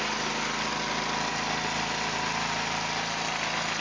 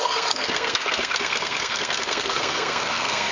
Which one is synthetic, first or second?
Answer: second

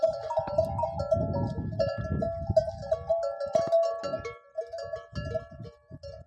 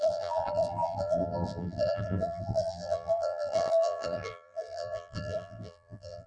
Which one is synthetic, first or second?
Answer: second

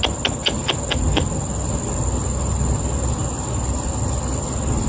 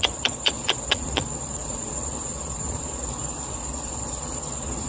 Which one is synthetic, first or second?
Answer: second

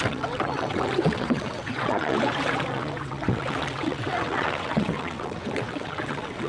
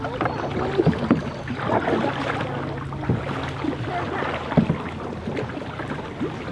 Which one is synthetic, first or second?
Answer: first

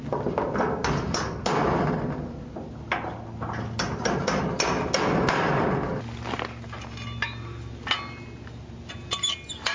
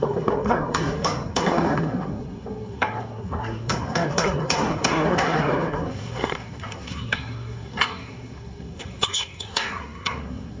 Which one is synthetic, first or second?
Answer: second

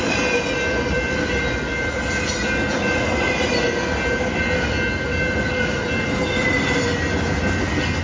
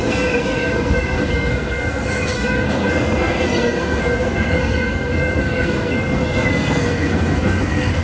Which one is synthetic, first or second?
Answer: second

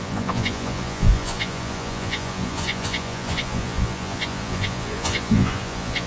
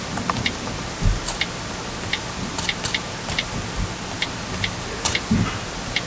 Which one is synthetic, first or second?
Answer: first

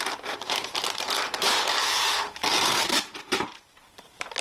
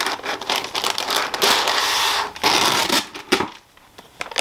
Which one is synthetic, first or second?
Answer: first